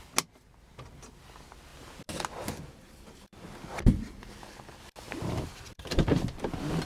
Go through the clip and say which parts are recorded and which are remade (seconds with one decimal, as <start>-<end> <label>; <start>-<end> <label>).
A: 0.0-6.9 recorded